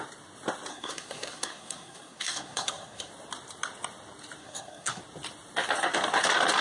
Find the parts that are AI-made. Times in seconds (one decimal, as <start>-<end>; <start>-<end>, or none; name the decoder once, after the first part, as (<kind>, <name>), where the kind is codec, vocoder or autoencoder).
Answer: 0.7-3.1 (codec, SNAC); 4.4-5.0